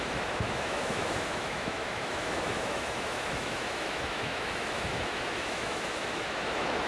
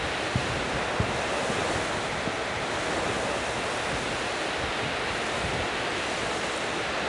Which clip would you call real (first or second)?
second